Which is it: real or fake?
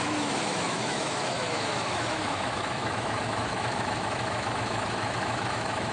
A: fake